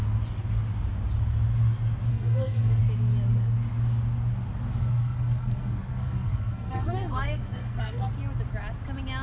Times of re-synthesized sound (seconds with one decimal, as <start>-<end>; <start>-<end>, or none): 2.1-2.8; 4.8-8.1